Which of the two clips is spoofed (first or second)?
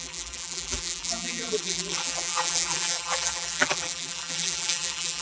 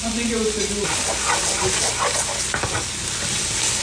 first